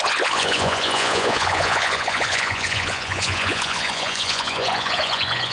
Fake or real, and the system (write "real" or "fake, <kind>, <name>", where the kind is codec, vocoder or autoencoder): fake, vocoder, Vocos